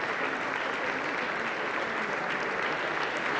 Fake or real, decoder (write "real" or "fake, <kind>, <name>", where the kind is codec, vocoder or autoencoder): real